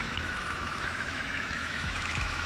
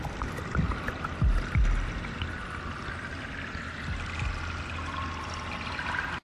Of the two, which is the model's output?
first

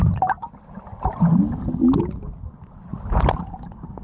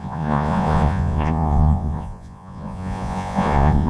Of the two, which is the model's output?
second